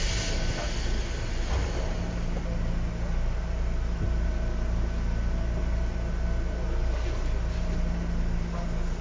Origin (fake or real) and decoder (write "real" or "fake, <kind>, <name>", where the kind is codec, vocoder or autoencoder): real